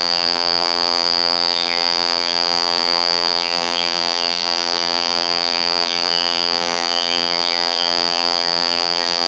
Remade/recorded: remade